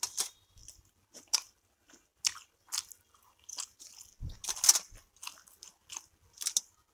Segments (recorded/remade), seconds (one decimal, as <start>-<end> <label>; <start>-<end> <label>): 0.0-6.9 recorded